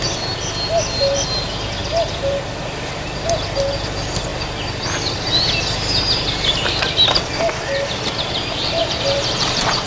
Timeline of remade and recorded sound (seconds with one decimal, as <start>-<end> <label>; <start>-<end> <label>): 0.0-1.8 recorded; 1.8-2.4 remade; 2.4-8.8 recorded; 8.8-9.9 remade